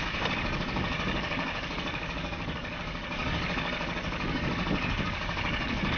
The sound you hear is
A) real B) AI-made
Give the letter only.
B